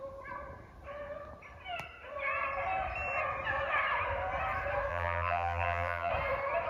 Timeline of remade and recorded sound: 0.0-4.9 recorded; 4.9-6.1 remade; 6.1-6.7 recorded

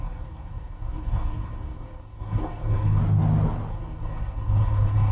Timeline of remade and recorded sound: 0.0-3.0 remade; 3.0-3.7 recorded; 3.7-5.1 remade

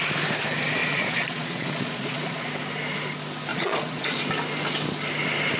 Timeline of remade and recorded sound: 0.0-0.8 recorded; 0.8-2.5 remade; 2.5-3.5 recorded; 3.5-4.2 remade; 4.2-5.6 recorded

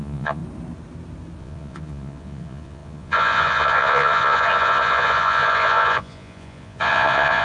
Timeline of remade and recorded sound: 0.0-0.4 remade; 0.4-1.4 recorded; 1.4-7.4 remade

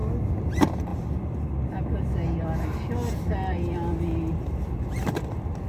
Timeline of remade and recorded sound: 0.0-5.7 recorded

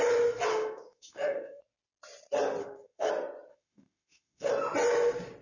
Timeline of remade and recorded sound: 0.0-0.5 recorded; 0.5-1.6 remade; 1.6-2.6 recorded; 2.6-3.1 remade; 3.1-3.5 recorded; 3.5-4.5 remade; 4.5-5.4 recorded

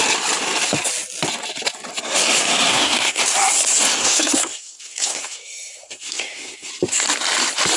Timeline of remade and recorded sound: 0.0-2.7 recorded; 2.7-3.2 remade; 3.2-4.0 recorded; 4.0-6.7 remade; 6.7-7.8 recorded